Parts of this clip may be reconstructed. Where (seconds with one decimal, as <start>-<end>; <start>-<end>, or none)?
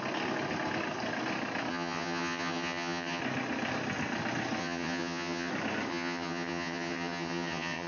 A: 1.7-3.2; 4.6-5.5; 5.9-7.9